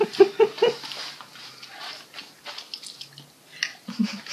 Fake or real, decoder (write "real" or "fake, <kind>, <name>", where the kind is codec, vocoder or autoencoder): real